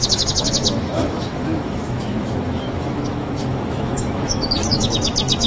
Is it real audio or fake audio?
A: fake